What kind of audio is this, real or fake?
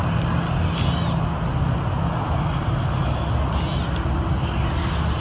real